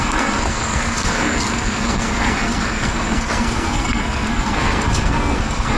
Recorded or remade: remade